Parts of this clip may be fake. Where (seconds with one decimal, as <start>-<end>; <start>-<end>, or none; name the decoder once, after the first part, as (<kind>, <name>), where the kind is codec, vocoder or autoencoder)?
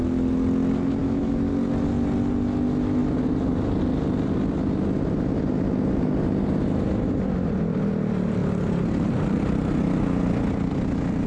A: 1.0-1.5 (autoencoder, DAC-VAE)